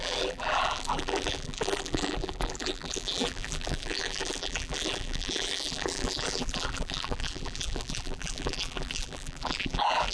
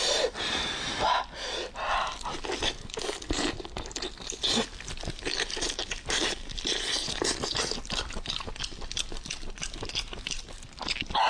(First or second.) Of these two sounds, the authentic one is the second